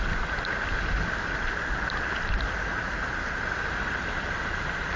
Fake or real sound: real